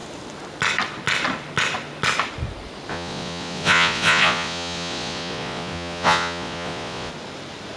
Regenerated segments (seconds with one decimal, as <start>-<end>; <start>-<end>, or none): 2.9-7.1